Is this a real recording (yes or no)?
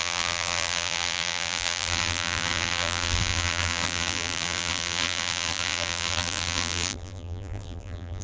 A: no